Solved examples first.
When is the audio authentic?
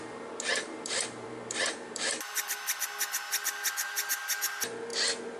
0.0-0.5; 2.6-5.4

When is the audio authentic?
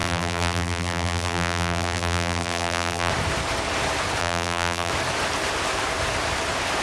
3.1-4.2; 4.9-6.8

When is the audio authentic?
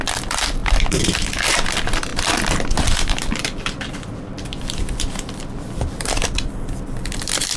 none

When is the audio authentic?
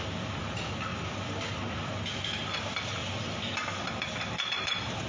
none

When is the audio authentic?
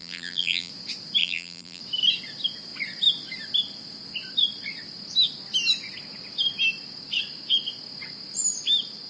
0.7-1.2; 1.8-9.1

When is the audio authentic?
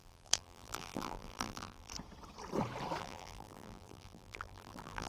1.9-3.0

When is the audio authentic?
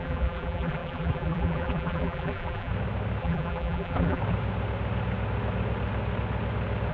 2.7-3.2; 4.2-6.9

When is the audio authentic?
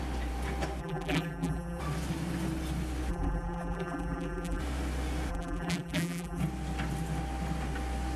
0.0-0.8; 1.8-3.1; 4.6-5.3; 6.4-8.2